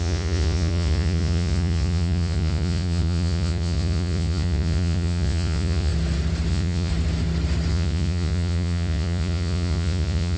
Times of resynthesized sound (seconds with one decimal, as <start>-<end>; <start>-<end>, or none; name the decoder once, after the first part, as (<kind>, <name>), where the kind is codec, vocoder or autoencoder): 0.0-5.9 (vocoder, Vocos); 6.5-6.9; 7.7-10.4